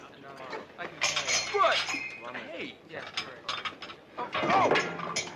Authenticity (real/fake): real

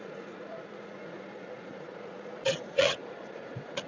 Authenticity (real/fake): fake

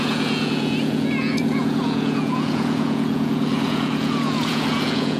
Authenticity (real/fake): fake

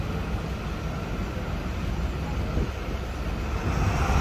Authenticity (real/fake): real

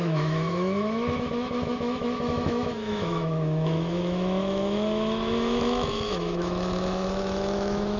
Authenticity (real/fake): fake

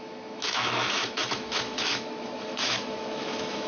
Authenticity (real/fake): fake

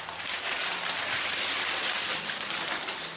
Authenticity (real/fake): real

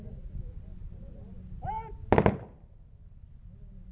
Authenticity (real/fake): real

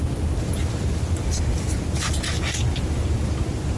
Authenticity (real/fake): real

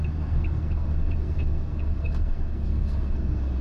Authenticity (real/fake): fake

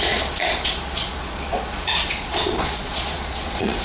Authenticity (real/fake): fake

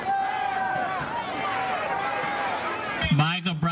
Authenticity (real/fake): real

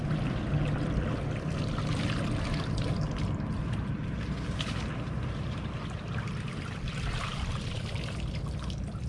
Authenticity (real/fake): real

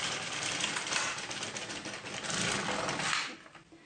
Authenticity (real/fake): real